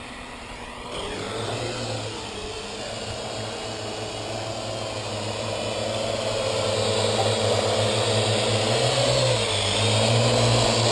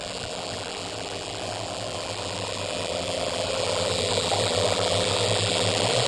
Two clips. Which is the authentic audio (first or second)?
first